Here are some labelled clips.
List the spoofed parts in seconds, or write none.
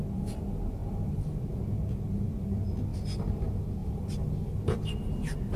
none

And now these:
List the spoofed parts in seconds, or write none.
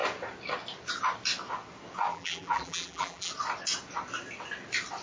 2.1-3.3 (vocoder, BigVGAN v2)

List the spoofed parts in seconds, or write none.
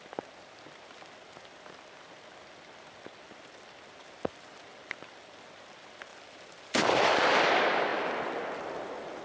4.0-4.6 (vocoder, BigVGAN v2); 6.1-6.8; 7.9-9.2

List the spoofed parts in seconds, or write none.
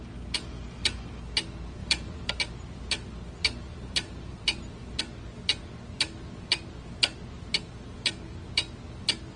1.8-2.4 (vocoder, BigVGAN v2); 3.4-5.0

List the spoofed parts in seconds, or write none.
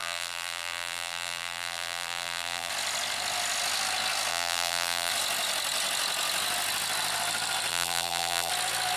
0.0-2.7 (vocoder, BigVGAN v2); 4.3-5.1; 7.7-8.5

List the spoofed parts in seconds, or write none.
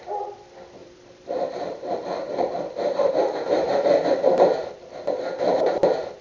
0.8-3.1 (vocoder, BigVGAN v2)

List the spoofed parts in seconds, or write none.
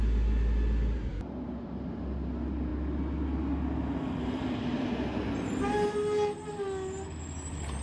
none